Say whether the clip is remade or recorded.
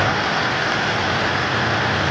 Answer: recorded